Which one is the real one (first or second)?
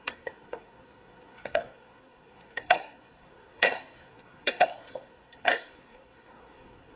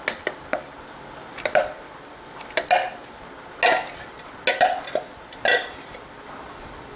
second